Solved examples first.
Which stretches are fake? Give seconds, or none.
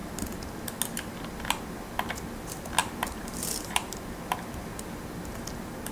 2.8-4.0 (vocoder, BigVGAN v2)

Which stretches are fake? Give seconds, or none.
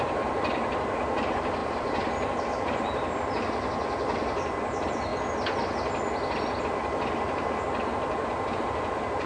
0.0-5.1 (vocoder, BigVGAN v2); 6.6-9.3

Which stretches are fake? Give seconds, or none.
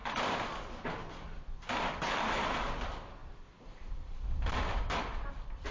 0.0-1.4 (vocoder, BigVGAN v2); 3.2-5.3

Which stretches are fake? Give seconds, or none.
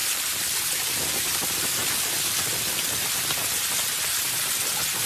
0.0-1.1 (vocoder, BigVGAN v2); 1.8-3.7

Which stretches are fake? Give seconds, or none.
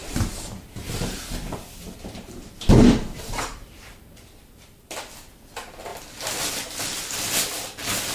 0.0-4.9 (vocoder, BigVGAN v2)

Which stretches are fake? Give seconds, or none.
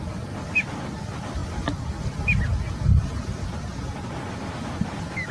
none